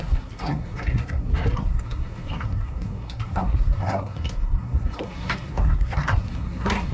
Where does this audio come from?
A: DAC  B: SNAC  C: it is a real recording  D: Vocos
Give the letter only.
B